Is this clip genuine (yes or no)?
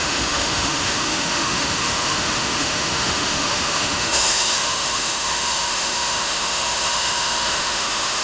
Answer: no